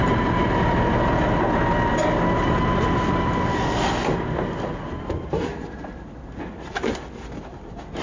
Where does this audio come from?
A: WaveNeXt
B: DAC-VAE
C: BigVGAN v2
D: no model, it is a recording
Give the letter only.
D